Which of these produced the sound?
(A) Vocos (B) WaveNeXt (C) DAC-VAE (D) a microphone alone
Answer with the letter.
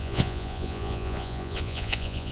A